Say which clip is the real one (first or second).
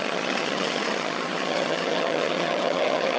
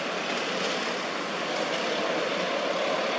second